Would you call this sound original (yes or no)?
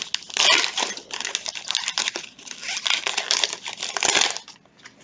yes